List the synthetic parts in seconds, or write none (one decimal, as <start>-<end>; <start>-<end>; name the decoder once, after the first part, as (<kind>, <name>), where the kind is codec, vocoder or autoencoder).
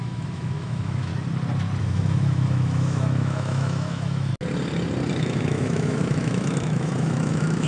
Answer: 0.0-1.1 (autoencoder, DAC-VAE); 1.8-4.3; 5.2-7.7